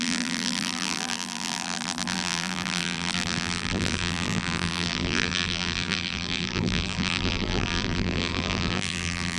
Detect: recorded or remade remade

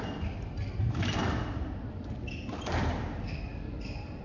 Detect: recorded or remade recorded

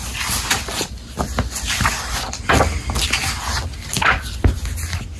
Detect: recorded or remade recorded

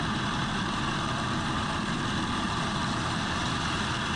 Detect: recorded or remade remade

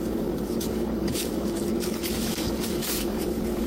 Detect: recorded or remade remade